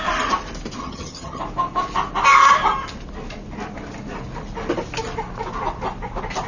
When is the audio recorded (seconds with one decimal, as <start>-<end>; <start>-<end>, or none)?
0.0-0.8; 1.4-6.5